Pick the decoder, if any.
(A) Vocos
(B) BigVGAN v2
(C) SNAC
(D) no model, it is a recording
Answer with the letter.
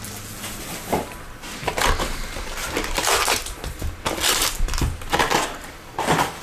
D